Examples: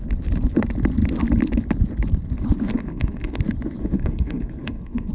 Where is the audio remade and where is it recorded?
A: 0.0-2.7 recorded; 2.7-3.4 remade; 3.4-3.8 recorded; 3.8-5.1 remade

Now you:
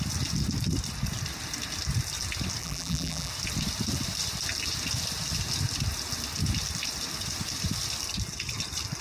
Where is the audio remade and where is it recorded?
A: 0.0-2.6 recorded; 2.6-3.3 remade; 3.3-9.0 recorded

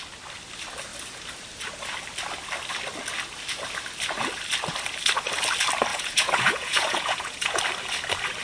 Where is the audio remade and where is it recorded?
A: 0.0-5.9 recorded; 5.9-7.6 remade; 7.6-8.4 recorded

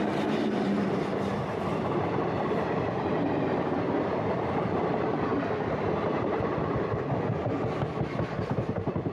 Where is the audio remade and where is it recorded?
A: 0.0-9.1 recorded

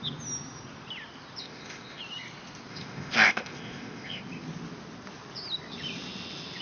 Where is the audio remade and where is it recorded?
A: 0.0-1.4 recorded; 1.4-2.0 remade; 2.0-2.7 recorded; 2.7-4.2 remade; 4.2-6.6 recorded

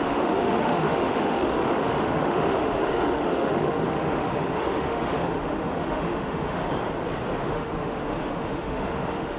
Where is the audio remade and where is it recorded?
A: 0.0-6.6 remade; 6.6-7.4 recorded; 7.4-9.4 remade

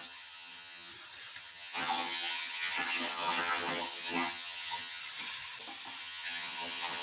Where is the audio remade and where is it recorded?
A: 0.0-0.9 remade; 0.9-1.4 recorded; 1.4-5.0 remade; 5.0-6.0 recorded; 6.0-7.0 remade

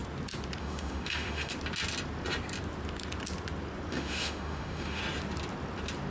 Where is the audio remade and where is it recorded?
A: 0.0-0.6 recorded; 0.6-1.5 remade; 1.5-3.9 recorded; 3.9-5.0 remade; 5.0-6.1 recorded